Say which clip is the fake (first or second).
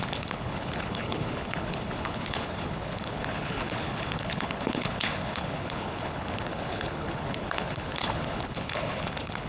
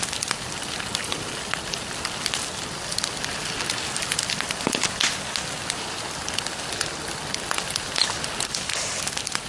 first